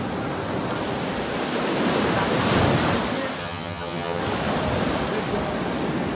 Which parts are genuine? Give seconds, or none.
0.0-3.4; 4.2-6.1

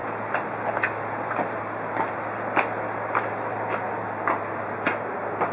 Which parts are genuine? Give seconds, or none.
0.0-5.5

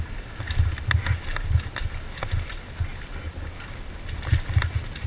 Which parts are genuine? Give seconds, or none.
0.0-5.1

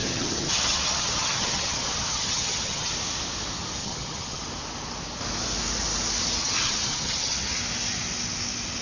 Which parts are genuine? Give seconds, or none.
2.9-3.8; 4.4-6.4; 7.6-8.8